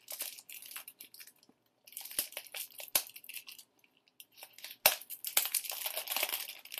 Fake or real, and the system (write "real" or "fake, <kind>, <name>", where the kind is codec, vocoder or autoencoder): real